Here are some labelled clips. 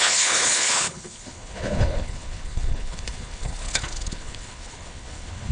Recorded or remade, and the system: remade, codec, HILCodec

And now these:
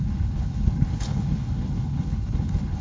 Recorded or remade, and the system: remade, codec, HILCodec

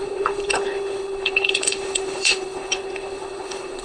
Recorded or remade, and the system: remade, codec, HILCodec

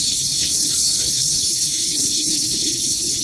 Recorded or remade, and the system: remade, codec, HILCodec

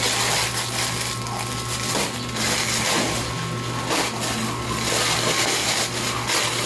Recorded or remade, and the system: recorded